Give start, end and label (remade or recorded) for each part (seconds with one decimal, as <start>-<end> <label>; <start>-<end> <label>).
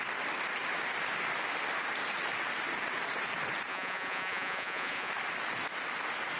0.0-3.7 recorded; 3.7-5.1 remade; 5.1-6.4 recorded